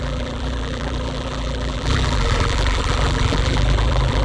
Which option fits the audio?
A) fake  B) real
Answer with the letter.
A